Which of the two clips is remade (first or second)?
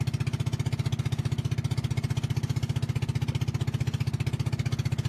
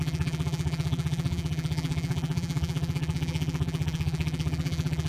second